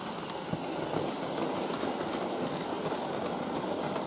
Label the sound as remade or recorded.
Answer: recorded